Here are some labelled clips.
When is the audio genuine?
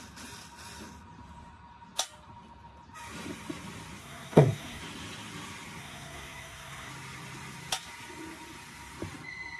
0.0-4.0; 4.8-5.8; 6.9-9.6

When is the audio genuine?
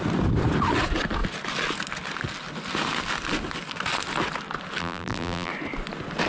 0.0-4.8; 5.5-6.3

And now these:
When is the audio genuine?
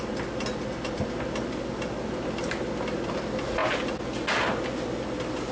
0.0-5.5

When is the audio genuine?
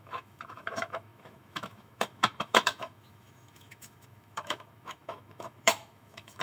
none